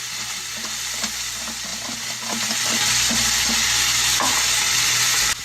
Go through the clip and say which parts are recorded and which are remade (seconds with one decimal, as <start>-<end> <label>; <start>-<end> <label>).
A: 0.0-5.4 recorded